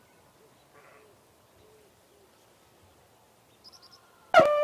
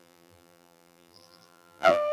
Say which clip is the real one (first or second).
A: first